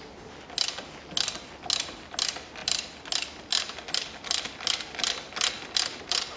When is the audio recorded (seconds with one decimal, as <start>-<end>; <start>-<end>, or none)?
0.0-6.4